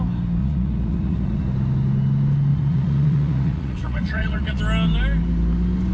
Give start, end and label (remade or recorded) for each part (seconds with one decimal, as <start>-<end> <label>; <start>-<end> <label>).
0.0-0.4 recorded; 0.4-1.4 remade; 1.4-2.5 recorded; 2.5-4.6 remade; 4.6-5.9 recorded